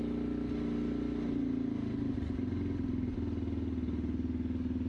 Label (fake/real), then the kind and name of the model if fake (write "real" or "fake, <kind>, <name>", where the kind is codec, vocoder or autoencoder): real